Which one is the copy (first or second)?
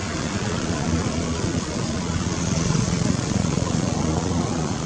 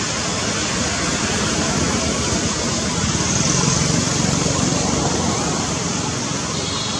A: first